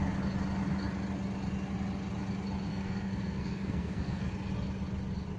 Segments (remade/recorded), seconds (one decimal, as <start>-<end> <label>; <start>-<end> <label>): 0.0-2.7 recorded; 2.7-4.3 remade; 4.3-5.4 recorded